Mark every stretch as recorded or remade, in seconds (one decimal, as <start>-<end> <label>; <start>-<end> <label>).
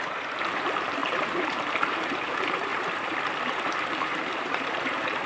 0.0-2.7 remade; 2.7-3.5 recorded; 3.5-5.3 remade